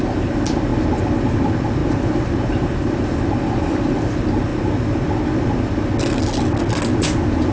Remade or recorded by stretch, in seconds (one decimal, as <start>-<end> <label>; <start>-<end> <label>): 0.0-7.5 recorded